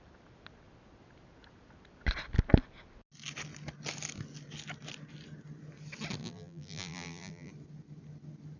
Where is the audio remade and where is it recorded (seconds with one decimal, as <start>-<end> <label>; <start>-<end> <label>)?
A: 0.0-6.2 recorded; 6.2-7.5 remade; 7.5-8.6 recorded